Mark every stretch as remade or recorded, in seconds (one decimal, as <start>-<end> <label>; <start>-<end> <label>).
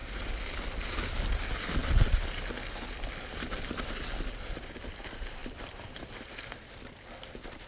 0.0-5.4 recorded; 5.4-6.7 remade; 6.7-7.7 recorded